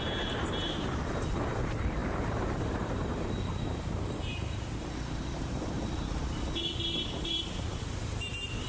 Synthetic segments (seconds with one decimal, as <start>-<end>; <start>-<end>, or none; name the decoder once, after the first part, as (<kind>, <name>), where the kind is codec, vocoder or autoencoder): 0.0-8.7 (vocoder, BigVGAN v2)